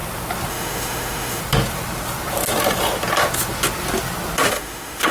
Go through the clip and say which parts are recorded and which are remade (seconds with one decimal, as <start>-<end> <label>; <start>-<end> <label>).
0.0-0.5 recorded; 0.5-1.4 remade; 1.4-4.5 recorded; 4.5-5.1 remade